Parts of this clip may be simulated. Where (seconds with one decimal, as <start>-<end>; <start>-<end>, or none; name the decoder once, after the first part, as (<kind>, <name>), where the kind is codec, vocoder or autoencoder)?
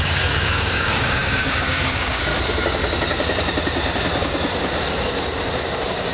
0.0-2.3 (codec, DAC)